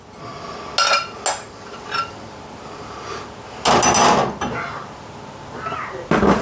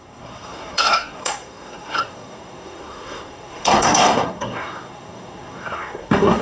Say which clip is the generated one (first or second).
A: second